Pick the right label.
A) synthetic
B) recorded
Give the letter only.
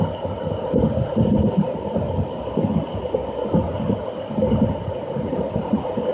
B